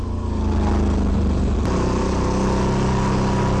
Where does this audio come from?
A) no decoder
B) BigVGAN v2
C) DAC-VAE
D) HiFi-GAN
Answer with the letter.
A